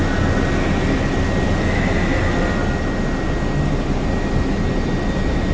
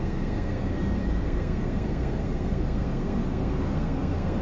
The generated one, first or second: second